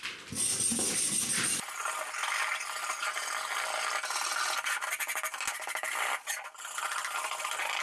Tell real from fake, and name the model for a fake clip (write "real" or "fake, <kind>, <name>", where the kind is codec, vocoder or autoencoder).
real